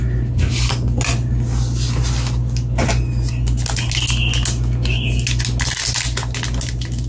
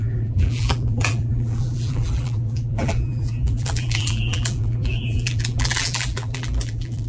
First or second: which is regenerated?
second